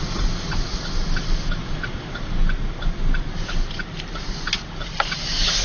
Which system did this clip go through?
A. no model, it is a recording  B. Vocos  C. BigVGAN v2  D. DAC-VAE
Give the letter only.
A